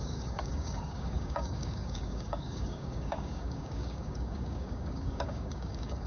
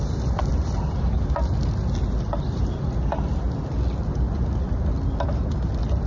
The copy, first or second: first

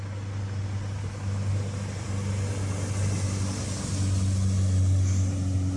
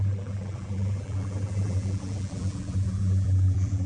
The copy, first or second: second